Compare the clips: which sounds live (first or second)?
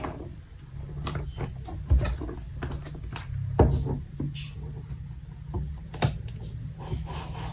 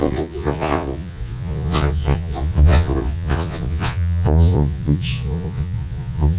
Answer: first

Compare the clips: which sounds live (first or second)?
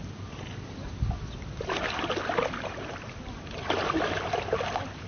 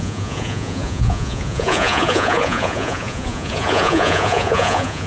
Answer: first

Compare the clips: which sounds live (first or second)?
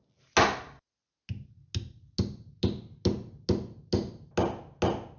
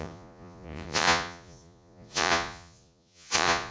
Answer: first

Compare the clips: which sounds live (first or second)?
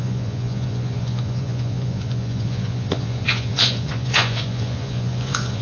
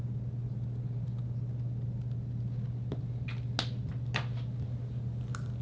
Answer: second